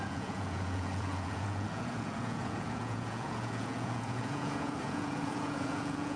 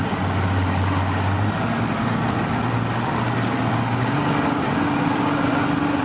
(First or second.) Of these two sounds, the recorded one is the second